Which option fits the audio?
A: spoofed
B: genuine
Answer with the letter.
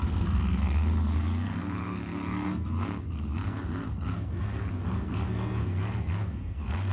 A